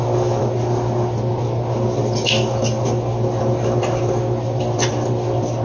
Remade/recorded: recorded